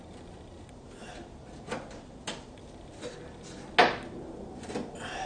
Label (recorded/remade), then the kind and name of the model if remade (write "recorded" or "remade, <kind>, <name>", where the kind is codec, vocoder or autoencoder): recorded